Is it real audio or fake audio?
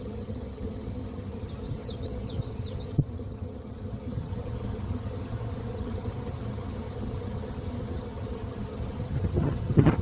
fake